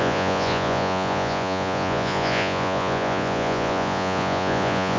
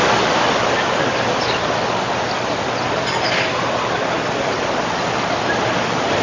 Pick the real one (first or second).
second